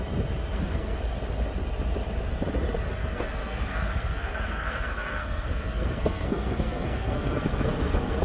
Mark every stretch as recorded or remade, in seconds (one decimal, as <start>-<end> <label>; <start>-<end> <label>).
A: 0.0-0.5 recorded; 0.5-1.0 remade; 1.0-3.0 recorded; 3.0-8.2 remade